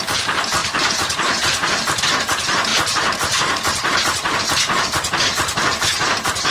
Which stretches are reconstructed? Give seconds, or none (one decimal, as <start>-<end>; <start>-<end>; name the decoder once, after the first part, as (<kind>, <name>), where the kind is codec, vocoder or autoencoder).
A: 0.6-2.0 (vocoder, BigVGAN v2); 2.7-4.0